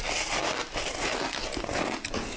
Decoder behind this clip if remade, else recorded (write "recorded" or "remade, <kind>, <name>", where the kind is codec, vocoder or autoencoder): recorded